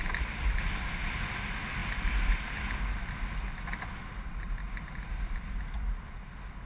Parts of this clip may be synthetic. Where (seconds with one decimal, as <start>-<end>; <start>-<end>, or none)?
none